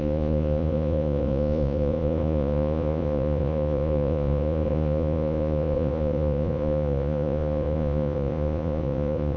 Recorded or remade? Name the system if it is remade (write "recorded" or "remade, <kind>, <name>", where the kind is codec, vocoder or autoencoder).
remade, vocoder, Vocos